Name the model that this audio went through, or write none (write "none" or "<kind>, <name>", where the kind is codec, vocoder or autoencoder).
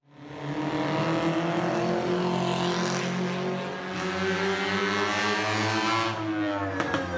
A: none